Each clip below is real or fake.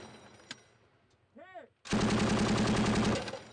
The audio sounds real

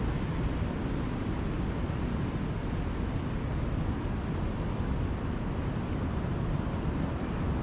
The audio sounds real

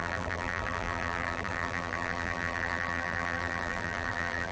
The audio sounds fake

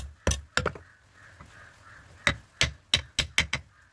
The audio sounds real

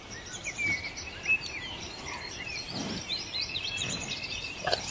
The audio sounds fake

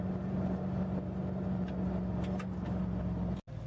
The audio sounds real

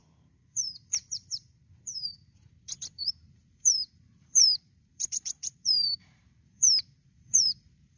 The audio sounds fake